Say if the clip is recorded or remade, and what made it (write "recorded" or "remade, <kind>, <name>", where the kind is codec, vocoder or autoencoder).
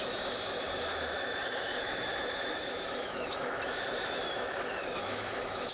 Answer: remade, autoencoder, DAC-VAE